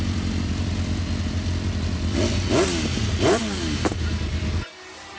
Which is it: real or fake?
real